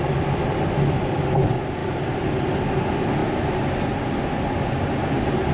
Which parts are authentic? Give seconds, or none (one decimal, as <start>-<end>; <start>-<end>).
0.0-1.8; 2.6-5.5